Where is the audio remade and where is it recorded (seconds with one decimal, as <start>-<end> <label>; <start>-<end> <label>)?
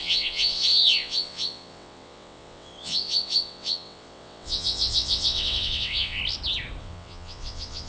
0.0-6.2 remade; 6.2-6.8 recorded; 6.8-7.9 remade